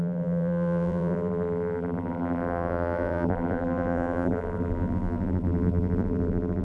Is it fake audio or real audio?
fake